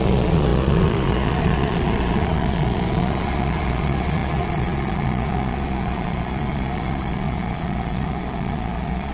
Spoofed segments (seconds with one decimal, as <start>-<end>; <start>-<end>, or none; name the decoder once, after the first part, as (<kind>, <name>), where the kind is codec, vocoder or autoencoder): 0.0-9.1 (vocoder, Vocos)

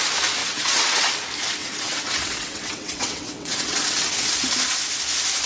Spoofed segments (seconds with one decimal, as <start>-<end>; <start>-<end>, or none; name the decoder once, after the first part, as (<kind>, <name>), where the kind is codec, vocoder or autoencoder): 0.4-1.1 (vocoder, WaveNeXt); 1.6-4.5

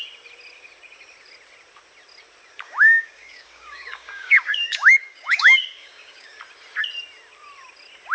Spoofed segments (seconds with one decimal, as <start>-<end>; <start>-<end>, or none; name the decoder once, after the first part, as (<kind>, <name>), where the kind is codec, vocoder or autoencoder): 2.5-6.4 (codec, DAC)

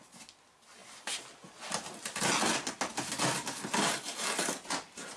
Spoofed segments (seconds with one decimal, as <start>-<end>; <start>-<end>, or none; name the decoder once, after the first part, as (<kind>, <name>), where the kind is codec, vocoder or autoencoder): none

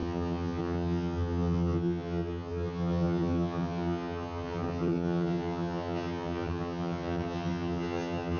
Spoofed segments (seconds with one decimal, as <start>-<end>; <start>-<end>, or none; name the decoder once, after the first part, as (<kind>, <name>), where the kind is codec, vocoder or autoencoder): 0.0-8.4 (vocoder, HiFi-GAN)

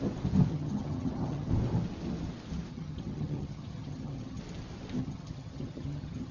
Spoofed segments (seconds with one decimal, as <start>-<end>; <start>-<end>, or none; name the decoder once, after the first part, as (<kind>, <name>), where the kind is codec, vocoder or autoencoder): 0.5-1.5 (vocoder, HiFi-GAN); 2.7-4.4; 5.0-6.3

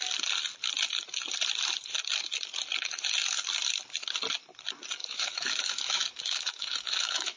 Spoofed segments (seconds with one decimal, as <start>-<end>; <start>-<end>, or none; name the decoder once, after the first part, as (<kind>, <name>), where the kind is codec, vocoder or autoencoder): 5.0-7.4 (autoencoder, DAC-VAE)